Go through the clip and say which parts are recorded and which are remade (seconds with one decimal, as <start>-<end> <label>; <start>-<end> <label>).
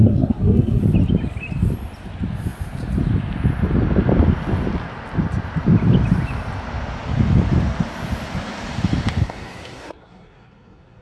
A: 0.0-0.8 remade; 0.8-9.2 recorded; 9.2-11.0 remade